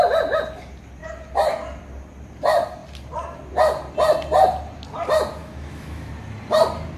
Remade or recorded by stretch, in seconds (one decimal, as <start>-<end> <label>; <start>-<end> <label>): 0.0-5.4 recorded; 5.4-6.1 remade; 6.1-7.0 recorded